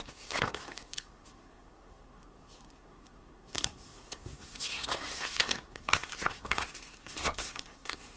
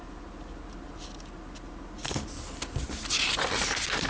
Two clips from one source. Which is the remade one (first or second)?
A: first